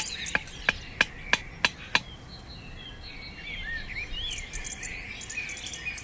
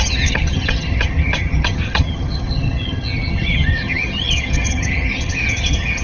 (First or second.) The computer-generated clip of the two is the second